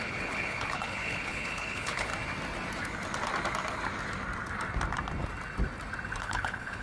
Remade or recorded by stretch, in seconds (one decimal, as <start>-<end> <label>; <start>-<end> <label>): 0.0-2.1 remade; 2.1-6.2 recorded; 6.2-6.8 remade